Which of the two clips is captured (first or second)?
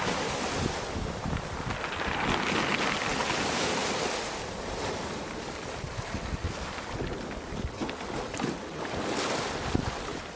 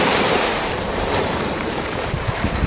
first